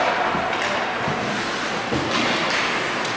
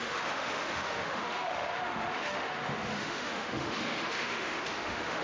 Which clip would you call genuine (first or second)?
first